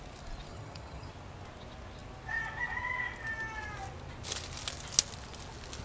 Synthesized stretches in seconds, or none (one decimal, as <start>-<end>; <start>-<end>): 0.5-1.1